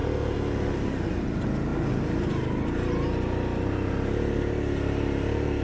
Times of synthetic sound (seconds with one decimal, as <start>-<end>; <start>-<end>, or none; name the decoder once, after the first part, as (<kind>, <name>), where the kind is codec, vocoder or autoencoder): none